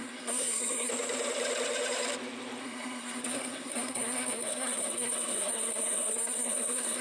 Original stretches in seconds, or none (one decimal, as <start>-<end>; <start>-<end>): 0.9-2.6